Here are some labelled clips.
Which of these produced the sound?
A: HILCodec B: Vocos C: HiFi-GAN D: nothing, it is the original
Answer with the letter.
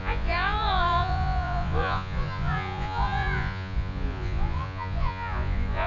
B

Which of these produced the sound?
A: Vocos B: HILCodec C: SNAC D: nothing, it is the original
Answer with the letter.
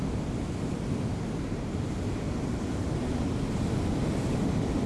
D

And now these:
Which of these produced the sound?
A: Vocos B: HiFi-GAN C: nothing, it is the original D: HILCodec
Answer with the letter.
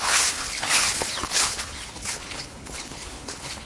D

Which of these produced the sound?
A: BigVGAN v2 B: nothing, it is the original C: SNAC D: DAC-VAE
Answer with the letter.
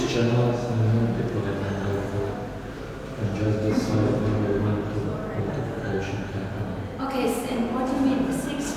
B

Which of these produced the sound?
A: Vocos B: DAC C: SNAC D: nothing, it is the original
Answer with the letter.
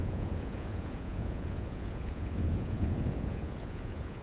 A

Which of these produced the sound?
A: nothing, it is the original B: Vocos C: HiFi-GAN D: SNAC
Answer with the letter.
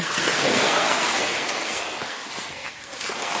D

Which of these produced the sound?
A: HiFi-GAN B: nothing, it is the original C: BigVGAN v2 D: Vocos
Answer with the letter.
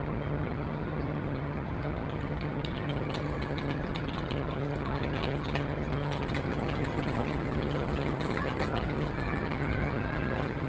A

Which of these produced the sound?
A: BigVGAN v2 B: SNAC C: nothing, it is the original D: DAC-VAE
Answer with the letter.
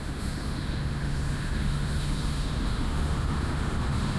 D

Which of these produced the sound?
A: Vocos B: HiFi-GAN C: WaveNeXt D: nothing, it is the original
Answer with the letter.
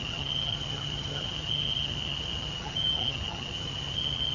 B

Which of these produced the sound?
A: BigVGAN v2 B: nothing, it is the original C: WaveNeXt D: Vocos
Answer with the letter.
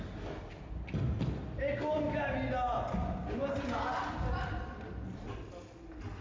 B